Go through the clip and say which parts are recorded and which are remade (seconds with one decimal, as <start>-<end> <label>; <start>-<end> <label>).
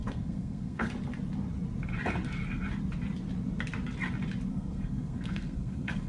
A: 0.0-0.9 remade; 0.9-4.5 recorded; 4.5-6.1 remade